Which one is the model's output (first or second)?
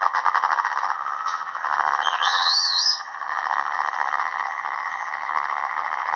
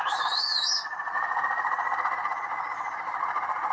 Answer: first